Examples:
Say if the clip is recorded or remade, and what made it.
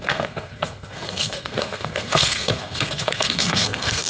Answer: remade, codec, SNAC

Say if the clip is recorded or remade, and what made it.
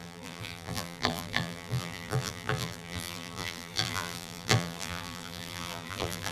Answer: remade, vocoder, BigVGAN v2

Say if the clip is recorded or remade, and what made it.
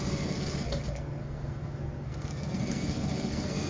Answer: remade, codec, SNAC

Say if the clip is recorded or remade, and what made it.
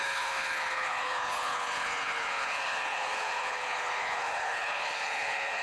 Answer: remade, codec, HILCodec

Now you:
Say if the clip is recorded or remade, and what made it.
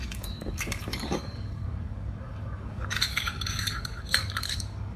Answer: remade, codec, DAC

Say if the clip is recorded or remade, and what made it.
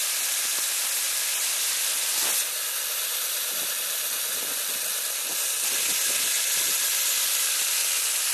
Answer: recorded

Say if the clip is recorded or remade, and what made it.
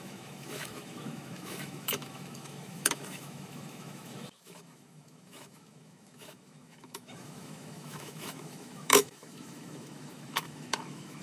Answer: remade, autoencoder, DAC-VAE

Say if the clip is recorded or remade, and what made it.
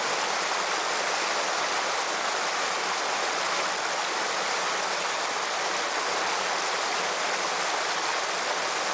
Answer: recorded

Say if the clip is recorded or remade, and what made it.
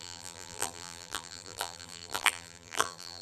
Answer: remade, vocoder, BigVGAN v2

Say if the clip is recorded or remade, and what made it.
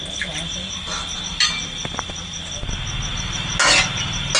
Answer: recorded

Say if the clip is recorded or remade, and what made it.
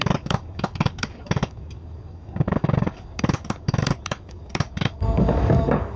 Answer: remade, codec, DAC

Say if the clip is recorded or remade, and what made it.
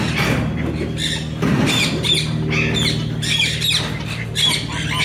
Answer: recorded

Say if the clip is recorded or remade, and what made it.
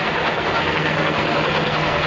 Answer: remade, codec, SNAC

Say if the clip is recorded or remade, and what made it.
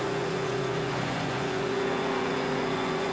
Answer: remade, vocoder, Vocos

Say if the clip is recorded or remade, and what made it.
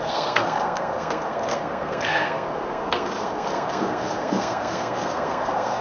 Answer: remade, codec, SNAC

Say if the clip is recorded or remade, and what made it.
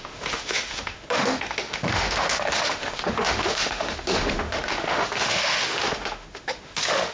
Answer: remade, autoencoder, DAC-VAE